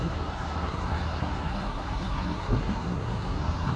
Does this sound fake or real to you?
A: fake